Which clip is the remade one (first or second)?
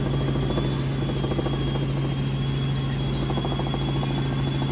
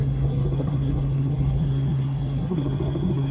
second